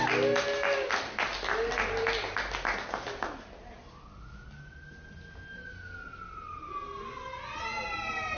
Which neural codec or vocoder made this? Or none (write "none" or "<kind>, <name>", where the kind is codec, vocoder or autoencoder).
none